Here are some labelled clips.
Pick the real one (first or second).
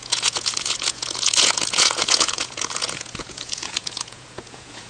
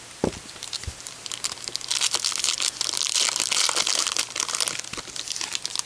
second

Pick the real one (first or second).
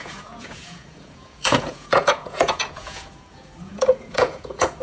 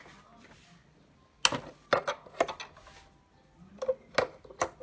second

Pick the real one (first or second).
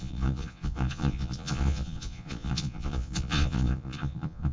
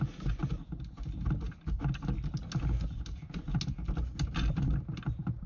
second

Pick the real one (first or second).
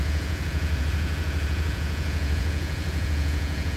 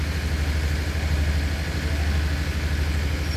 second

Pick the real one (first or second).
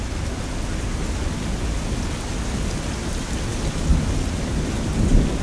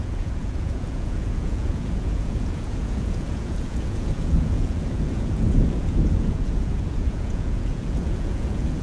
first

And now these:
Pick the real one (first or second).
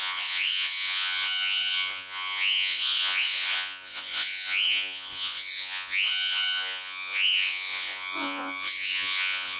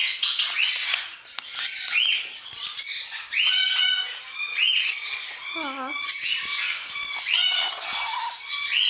second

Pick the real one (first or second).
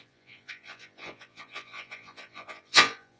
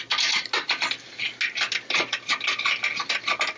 second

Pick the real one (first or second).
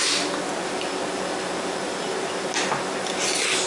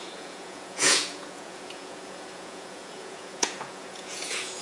first